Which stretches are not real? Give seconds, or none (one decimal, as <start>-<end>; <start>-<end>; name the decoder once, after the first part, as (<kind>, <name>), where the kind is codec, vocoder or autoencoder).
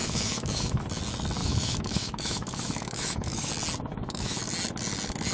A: 0.0-0.8 (autoencoder, DAC-VAE); 1.4-3.5; 3.9-4.4